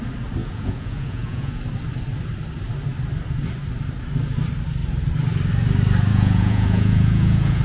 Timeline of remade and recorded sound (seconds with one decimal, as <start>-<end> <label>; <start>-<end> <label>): 0.0-0.4 recorded; 0.4-1.6 remade; 1.6-6.1 recorded; 6.1-7.6 remade